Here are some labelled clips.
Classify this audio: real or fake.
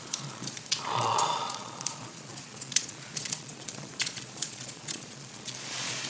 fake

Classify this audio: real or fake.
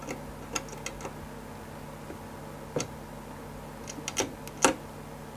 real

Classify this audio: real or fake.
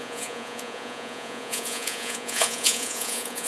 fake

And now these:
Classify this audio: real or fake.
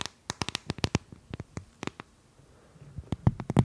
real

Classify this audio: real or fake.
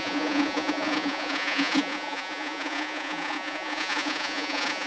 fake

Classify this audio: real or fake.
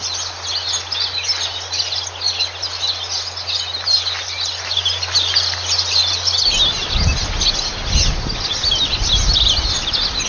real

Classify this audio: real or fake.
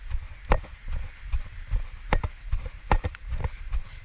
real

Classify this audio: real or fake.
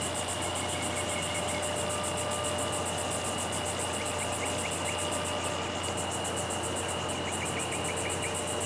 real